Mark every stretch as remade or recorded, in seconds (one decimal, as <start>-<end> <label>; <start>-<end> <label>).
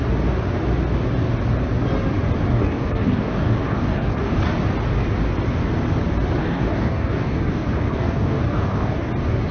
0.0-2.5 recorded; 2.5-4.4 remade; 4.4-6.4 recorded; 6.4-9.1 remade; 9.1-9.5 recorded